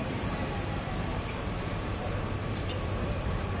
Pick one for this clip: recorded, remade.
remade